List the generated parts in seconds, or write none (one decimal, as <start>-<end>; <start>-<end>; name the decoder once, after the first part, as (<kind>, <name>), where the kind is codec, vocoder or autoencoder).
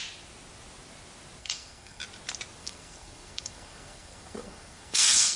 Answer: 1.4-2.0 (codec, SNAC); 2.6-5.4